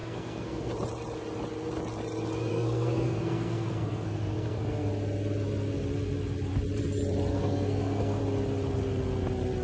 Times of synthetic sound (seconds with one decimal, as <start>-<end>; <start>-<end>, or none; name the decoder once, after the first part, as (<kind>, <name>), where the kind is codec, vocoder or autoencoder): 0.0-0.7 (codec, SNAC); 2.5-4.9; 7.3-8.2